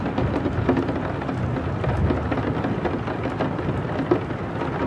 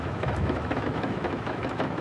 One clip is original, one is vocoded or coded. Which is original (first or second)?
first